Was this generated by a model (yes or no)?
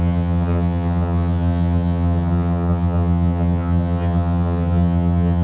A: yes